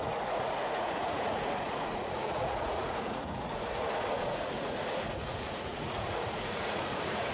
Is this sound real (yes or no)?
no